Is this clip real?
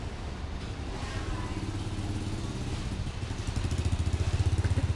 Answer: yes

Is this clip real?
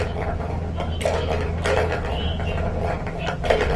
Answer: yes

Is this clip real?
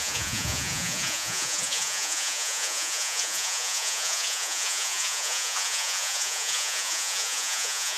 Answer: no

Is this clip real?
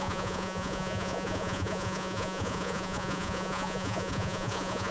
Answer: no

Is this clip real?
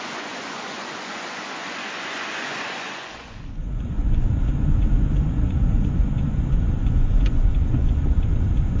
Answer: no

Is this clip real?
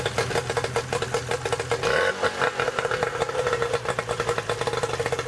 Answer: yes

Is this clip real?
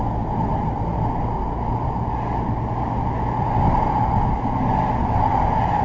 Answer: yes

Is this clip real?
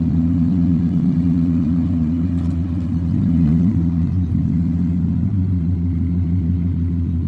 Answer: no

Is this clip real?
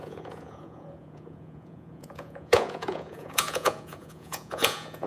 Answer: no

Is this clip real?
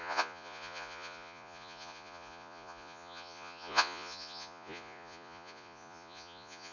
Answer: no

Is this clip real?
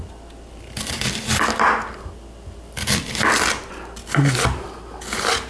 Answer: yes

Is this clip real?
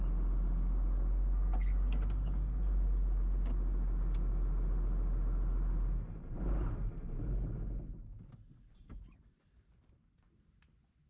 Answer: yes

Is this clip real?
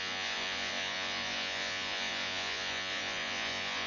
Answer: no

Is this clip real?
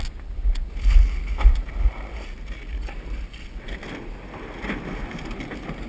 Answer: yes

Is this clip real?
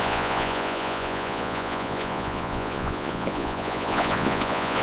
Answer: no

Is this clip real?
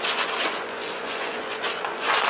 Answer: no